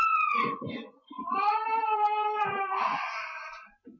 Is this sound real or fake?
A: fake